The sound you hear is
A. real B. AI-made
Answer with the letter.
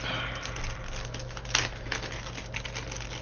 A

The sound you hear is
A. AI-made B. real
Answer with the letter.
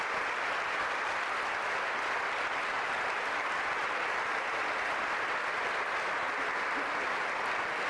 B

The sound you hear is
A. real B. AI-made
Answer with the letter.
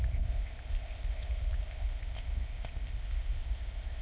B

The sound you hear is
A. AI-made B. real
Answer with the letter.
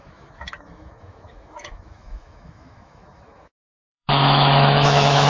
A